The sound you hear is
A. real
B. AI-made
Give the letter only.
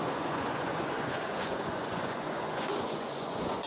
B